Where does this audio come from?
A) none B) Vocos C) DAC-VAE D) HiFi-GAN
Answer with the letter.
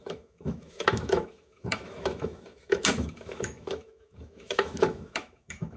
C